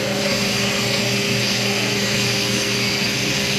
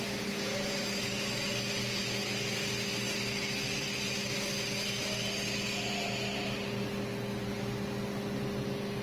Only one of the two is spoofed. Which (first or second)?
first